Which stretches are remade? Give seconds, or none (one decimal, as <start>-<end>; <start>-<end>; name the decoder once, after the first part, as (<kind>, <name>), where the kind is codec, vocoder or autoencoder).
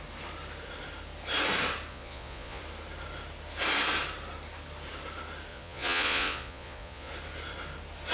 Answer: 1.9-2.6 (vocoder, Vocos); 5.5-7.1